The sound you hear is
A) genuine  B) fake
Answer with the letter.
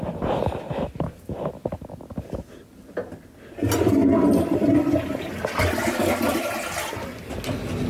A